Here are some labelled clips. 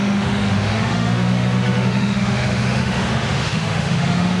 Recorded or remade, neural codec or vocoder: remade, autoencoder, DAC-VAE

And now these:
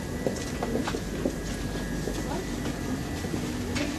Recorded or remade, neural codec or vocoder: recorded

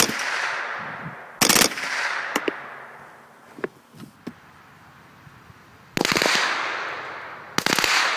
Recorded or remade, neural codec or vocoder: recorded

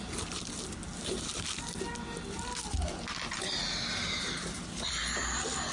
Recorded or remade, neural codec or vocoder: recorded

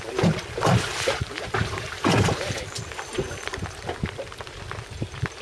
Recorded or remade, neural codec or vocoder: recorded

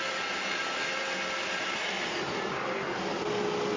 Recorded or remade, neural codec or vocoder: recorded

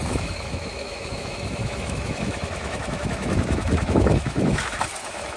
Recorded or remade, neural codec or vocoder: remade, autoencoder, DAC-VAE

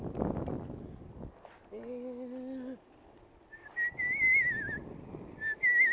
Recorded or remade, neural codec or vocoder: recorded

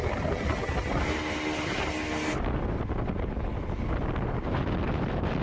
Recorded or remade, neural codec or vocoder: recorded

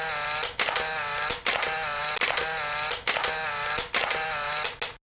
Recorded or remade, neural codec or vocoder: recorded